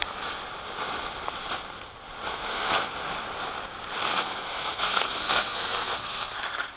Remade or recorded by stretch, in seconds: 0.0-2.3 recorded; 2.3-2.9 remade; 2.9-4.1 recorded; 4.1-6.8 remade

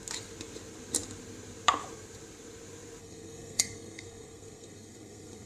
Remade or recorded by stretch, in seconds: 0.0-3.0 recorded; 3.0-5.5 remade